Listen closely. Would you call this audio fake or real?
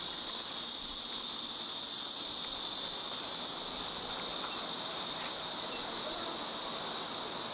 real